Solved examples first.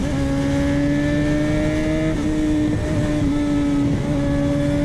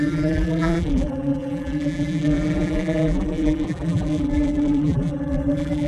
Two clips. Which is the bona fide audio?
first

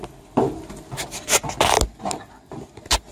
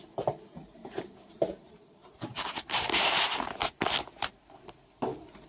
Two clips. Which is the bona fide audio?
first